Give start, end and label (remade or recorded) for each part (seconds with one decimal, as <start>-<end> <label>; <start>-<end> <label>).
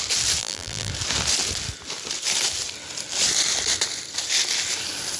0.0-0.4 recorded; 0.4-0.9 remade; 0.9-5.2 recorded